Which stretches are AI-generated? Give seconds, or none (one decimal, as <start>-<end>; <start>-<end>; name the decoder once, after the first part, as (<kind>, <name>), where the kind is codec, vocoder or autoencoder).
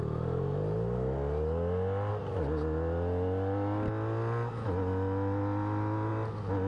none